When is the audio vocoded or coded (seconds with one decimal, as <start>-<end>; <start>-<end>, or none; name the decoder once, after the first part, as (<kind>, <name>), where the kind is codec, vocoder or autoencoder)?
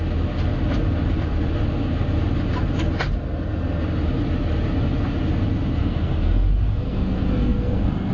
5.8-8.1 (codec, SNAC)